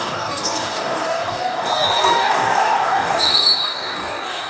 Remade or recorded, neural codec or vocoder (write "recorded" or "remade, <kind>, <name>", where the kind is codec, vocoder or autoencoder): remade, codec, DAC